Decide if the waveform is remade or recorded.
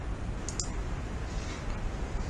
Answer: recorded